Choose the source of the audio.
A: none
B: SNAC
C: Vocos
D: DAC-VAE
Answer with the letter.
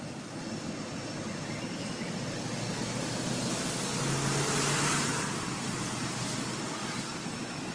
A